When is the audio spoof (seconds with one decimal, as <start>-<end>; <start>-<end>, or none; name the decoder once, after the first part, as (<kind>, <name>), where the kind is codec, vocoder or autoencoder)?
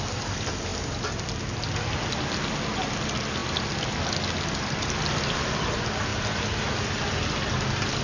none